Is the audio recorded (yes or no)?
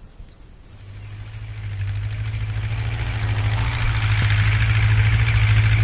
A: yes